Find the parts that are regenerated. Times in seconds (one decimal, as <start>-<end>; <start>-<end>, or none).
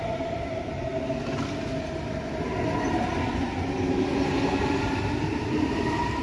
0.0-0.9; 4.6-6.2